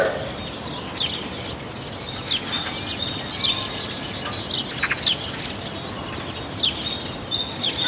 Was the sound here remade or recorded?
recorded